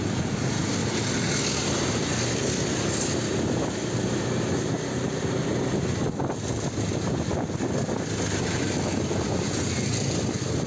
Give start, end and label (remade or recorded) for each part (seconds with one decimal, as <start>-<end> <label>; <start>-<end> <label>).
0.0-10.7 recorded